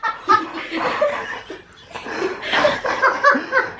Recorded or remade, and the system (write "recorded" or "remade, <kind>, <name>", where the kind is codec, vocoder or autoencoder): remade, vocoder, BigVGAN v2